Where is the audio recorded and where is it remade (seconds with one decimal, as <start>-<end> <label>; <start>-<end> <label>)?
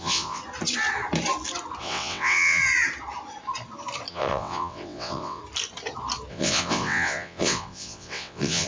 0.0-0.4 remade; 0.4-1.8 recorded; 1.8-2.6 remade; 2.6-4.1 recorded; 4.1-5.4 remade; 5.4-6.3 recorded; 6.3-8.7 remade